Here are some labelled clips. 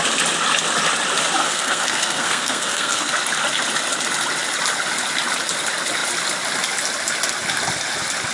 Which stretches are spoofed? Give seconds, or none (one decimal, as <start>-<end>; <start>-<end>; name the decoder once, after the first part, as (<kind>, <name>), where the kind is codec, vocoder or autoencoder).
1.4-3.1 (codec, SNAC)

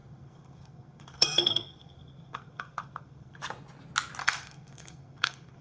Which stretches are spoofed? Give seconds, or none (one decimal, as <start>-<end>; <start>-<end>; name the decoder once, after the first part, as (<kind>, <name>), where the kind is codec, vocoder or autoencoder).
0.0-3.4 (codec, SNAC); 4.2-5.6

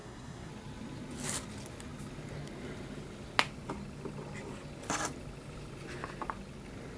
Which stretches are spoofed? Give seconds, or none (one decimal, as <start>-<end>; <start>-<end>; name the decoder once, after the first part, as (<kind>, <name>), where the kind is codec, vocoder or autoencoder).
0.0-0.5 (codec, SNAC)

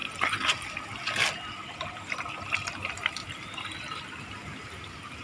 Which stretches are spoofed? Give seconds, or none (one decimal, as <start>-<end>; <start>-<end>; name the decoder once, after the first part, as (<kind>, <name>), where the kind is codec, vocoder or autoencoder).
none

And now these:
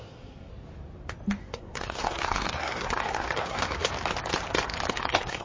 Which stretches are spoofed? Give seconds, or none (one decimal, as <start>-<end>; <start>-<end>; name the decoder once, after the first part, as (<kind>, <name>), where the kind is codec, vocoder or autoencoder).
0.0-0.5 (codec, SNAC); 1.4-3.9; 4.9-5.4